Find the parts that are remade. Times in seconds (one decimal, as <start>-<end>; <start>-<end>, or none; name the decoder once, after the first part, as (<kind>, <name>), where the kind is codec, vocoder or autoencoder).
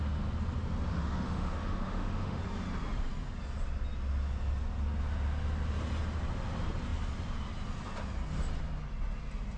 0.9-2.4 (autoencoder, DAC-VAE)